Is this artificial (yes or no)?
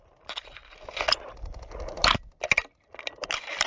no